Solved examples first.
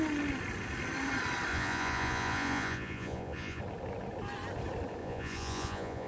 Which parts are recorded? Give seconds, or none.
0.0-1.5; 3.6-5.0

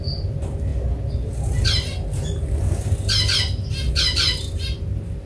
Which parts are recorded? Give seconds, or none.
0.0-5.3

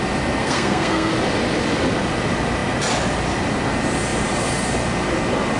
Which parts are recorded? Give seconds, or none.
0.0-0.4; 1.1-5.6

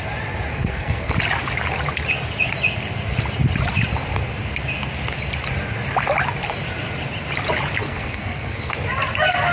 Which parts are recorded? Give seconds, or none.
0.0-0.5; 1.1-7.8; 8.7-9.5